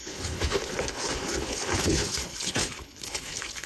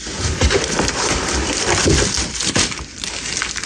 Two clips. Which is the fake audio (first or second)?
first